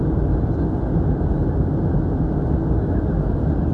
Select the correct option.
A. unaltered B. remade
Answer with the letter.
A